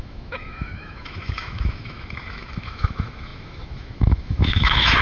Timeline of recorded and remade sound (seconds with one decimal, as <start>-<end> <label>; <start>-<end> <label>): 0.0-5.0 remade